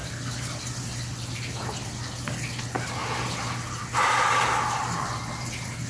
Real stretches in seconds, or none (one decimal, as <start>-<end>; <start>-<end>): 0.0-5.9